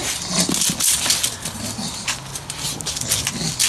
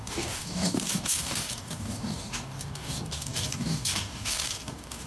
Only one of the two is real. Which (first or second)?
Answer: first